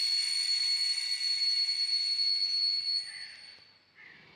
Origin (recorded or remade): recorded